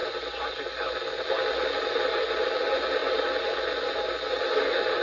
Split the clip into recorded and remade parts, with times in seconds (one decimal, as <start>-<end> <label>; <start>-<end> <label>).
0.0-5.0 recorded

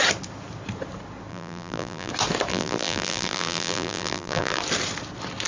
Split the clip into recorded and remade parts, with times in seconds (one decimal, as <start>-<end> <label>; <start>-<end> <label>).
0.0-1.3 recorded; 1.3-2.1 remade; 2.1-2.5 recorded; 2.5-4.6 remade; 4.6-5.5 recorded